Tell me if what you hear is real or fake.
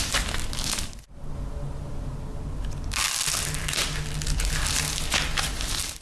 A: real